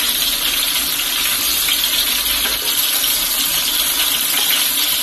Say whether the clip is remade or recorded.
recorded